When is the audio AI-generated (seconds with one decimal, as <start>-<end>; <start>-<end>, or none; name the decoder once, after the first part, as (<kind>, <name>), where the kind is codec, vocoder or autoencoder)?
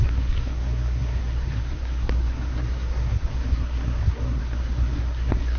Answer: 0.0-5.6 (codec, SNAC)